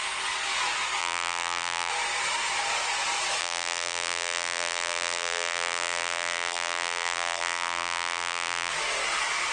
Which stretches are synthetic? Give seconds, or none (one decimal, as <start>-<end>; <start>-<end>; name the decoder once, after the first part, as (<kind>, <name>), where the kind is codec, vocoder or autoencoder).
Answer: 1.0-1.9 (vocoder, BigVGAN v2); 3.4-8.7